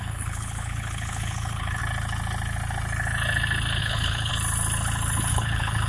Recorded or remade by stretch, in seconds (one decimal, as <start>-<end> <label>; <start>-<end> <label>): 0.0-1.8 remade; 1.8-3.8 recorded; 3.8-4.3 remade; 4.3-5.3 recorded; 5.3-5.9 remade